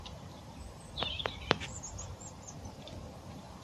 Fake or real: fake